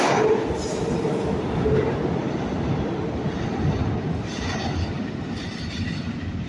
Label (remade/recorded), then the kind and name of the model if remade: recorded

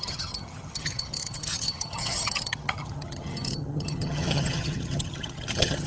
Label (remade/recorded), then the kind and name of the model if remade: remade, vocoder, HiFi-GAN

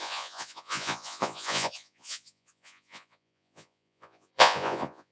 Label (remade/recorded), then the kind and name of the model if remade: remade, vocoder, Vocos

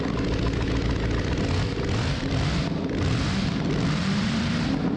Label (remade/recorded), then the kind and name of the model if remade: recorded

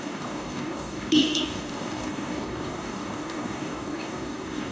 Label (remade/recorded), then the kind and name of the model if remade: remade, codec, DAC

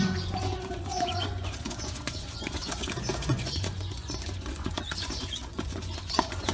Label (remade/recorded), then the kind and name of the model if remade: remade, vocoder, Vocos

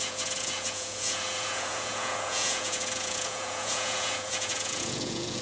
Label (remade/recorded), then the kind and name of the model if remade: remade, vocoder, Vocos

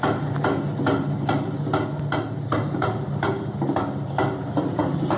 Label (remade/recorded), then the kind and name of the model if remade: recorded